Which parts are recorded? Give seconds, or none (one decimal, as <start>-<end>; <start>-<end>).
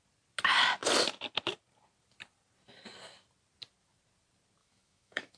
0.0-4.6